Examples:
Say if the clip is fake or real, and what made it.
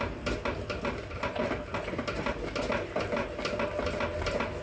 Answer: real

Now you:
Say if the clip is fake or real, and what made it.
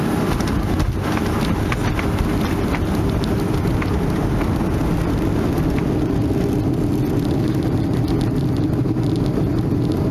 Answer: real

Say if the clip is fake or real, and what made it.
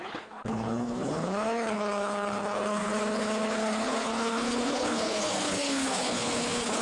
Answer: fake, codec, HILCodec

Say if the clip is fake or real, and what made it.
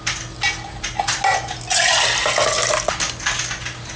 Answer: real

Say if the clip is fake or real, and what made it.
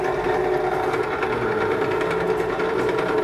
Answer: real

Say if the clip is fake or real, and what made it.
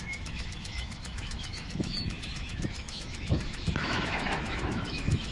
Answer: fake, autoencoder, DAC-VAE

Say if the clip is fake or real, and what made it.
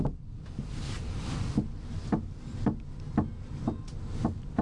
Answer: fake, vocoder, BigVGAN v2